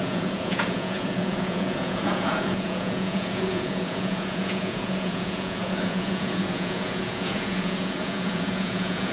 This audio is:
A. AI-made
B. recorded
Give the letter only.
A